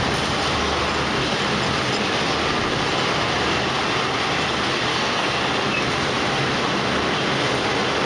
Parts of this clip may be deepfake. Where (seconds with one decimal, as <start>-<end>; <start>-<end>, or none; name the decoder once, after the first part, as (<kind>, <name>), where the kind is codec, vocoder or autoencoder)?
4.9-5.4 (codec, SNAC)

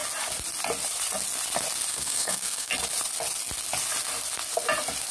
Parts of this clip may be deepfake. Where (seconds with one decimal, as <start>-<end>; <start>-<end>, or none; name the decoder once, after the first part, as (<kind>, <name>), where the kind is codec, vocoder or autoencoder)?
1.9-2.7 (codec, SNAC)

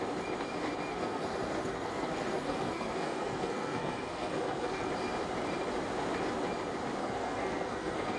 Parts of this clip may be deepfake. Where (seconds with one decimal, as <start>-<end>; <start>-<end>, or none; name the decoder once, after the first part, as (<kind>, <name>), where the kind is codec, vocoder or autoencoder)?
0.9-4.9 (codec, SNAC); 7.0-8.2

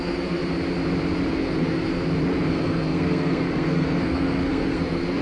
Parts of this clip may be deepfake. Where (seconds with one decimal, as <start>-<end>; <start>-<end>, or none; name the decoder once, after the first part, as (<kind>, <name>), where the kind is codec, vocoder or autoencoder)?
0.0-0.4 (codec, SNAC); 1.3-1.9; 2.5-5.2

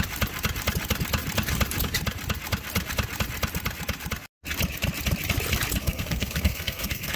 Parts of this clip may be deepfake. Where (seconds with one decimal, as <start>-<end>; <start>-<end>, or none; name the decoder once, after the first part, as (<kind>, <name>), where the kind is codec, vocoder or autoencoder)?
5.8-7.2 (codec, SNAC)

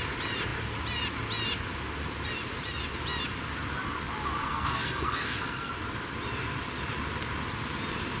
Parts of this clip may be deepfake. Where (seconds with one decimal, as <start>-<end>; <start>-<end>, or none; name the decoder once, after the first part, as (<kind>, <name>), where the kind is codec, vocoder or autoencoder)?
4.4-5.7 (codec, SNAC)

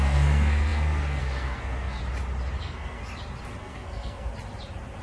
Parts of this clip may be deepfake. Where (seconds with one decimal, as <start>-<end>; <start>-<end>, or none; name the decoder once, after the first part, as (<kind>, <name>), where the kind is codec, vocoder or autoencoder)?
0.0-2.0 (codec, SNAC); 2.6-3.0; 3.6-4.3

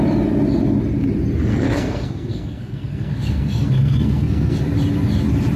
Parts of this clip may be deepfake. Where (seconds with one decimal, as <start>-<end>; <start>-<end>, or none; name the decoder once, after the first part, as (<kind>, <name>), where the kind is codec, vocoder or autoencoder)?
1.5-4.6 (codec, SNAC)